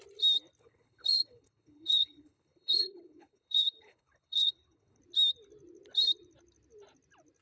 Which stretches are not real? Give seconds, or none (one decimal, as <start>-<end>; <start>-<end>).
0.6-5.0